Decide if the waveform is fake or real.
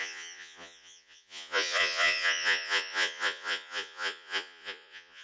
fake